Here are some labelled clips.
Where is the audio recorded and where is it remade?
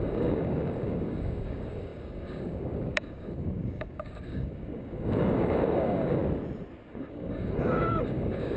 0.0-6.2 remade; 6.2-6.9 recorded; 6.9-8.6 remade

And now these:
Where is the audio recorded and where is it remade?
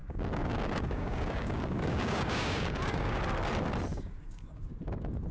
0.0-3.2 remade; 3.2-3.9 recorded; 3.9-4.7 remade; 4.7-5.3 recorded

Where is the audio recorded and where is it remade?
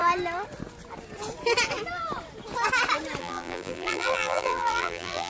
0.0-3.2 recorded; 3.2-5.3 remade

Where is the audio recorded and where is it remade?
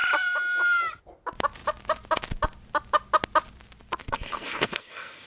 0.0-4.0 recorded; 4.0-5.3 remade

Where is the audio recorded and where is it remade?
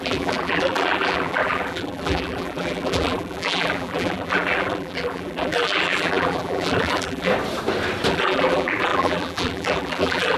0.0-7.3 remade; 7.3-8.1 recorded; 8.1-10.4 remade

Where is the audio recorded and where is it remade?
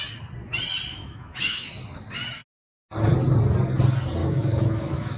0.0-0.9 recorded; 0.9-1.7 remade; 1.7-4.2 recorded; 4.2-5.2 remade